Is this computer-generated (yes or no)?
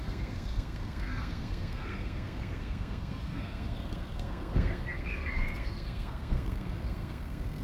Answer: yes